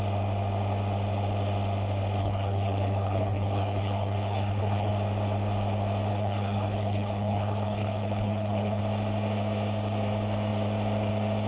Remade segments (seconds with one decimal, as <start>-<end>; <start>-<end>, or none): 2.2-4.9; 6.1-8.8

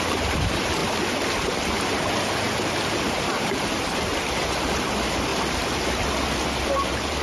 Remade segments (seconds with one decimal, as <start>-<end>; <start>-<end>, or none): 0.0-0.8; 3.0-5.3; 6.6-7.2

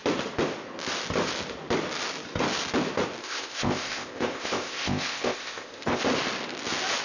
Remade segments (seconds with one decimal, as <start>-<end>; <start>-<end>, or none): 3.2-6.0

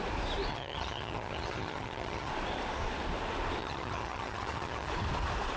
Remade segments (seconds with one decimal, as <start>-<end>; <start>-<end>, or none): 0.5-2.3; 3.6-4.9